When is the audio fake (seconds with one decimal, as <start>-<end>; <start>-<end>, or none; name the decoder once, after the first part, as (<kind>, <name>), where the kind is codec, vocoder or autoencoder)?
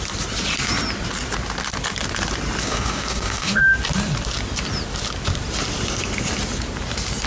2.6-3.6 (codec, DAC)